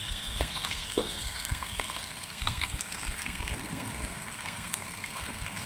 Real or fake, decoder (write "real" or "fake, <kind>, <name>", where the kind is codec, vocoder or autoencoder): fake, codec, SNAC